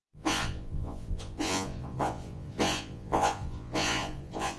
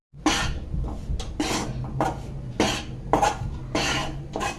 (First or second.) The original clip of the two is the second